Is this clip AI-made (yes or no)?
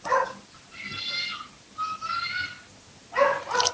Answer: no